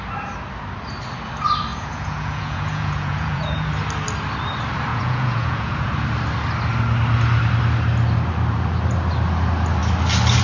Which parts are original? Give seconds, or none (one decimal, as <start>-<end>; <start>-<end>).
0.0-1.7; 3.7-4.9; 5.9-10.4